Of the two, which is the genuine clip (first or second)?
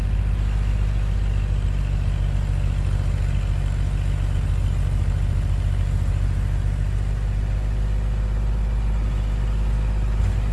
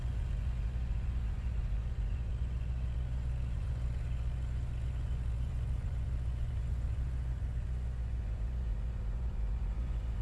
first